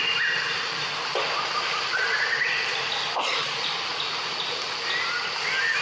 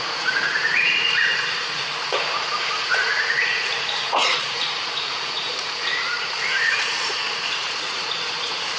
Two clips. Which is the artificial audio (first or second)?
second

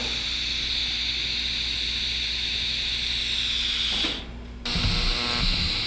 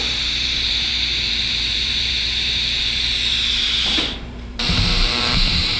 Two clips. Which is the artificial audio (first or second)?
second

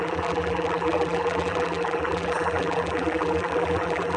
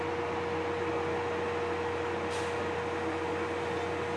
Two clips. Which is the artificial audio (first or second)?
first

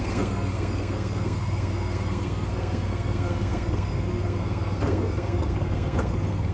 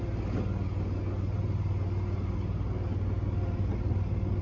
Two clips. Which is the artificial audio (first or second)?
first